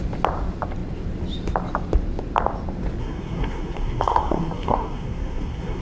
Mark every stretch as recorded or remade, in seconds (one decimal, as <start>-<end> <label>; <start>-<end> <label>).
0.0-3.0 recorded; 3.0-5.8 remade

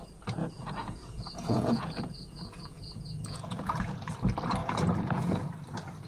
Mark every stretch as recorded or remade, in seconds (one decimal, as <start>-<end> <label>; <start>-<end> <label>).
0.0-0.4 recorded; 0.4-4.1 remade; 4.1-4.6 recorded; 4.6-5.5 remade; 5.5-6.1 recorded